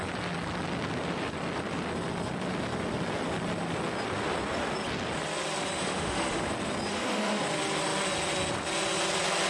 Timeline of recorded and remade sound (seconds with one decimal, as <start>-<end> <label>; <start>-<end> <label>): 0.0-5.8 recorded; 5.8-6.4 remade; 6.4-6.9 recorded; 6.9-7.4 remade; 7.4-9.5 recorded